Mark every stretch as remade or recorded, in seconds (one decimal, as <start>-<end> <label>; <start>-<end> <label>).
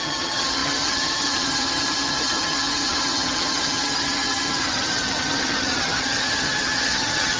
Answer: 0.0-7.4 remade